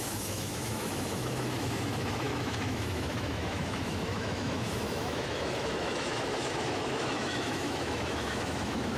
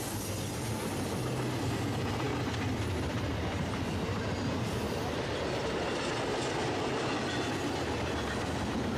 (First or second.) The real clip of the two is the second